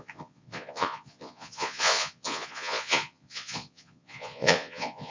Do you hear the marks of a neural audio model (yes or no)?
yes